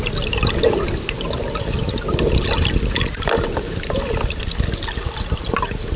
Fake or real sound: real